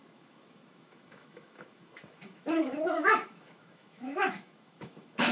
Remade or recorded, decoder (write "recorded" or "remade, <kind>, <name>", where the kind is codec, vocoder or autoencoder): remade, autoencoder, DAC-VAE